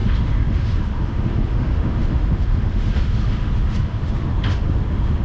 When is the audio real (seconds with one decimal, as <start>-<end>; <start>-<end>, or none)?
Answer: none